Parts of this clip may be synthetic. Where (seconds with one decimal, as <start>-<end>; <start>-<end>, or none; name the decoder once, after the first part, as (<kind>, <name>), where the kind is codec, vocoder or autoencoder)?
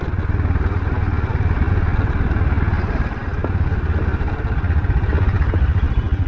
none